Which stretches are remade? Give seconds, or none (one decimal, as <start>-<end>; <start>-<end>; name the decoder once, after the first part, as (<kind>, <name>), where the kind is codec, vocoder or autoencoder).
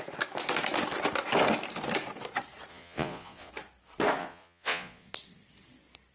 2.7-3.5 (vocoder, Vocos); 4.2-5.1